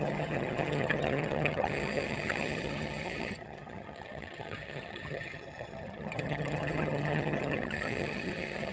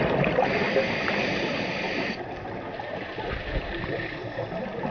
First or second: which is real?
second